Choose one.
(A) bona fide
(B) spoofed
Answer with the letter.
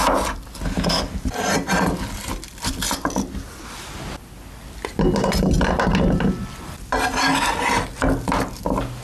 A